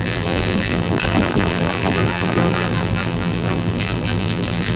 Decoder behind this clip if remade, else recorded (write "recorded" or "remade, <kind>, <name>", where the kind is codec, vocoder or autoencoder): remade, vocoder, BigVGAN v2